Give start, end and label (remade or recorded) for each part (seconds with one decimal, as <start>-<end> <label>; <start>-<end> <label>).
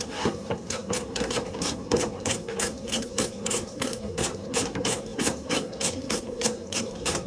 0.0-7.3 remade